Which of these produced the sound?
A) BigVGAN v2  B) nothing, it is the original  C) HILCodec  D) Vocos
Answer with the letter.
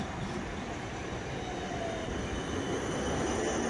B